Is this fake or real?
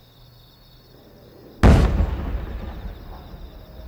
real